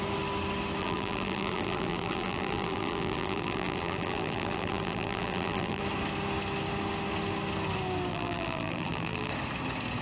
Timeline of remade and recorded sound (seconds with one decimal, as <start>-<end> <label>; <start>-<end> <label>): 0.0-0.8 recorded; 0.8-5.8 remade; 5.8-8.1 recorded; 8.1-9.3 remade; 9.3-10.0 recorded